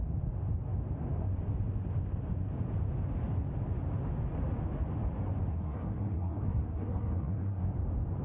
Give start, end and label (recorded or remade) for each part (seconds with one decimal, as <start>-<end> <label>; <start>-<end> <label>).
0.0-5.5 recorded; 5.5-7.7 remade; 7.7-8.2 recorded